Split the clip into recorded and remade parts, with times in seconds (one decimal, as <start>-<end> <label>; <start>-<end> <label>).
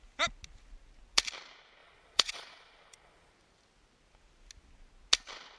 0.0-1.8 recorded; 1.8-3.3 remade; 3.3-5.6 recorded